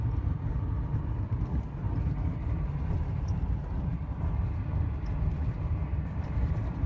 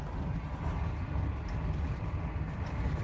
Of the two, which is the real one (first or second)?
second